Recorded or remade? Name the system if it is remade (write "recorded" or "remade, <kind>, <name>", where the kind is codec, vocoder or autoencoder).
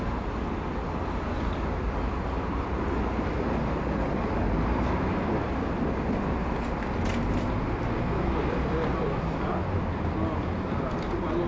recorded